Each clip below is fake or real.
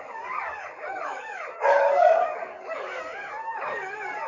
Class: fake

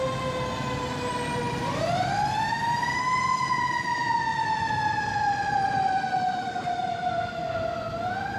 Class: real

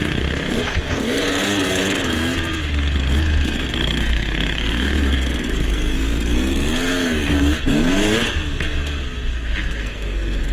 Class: fake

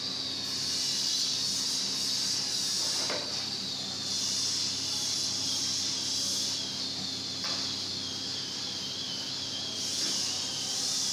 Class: real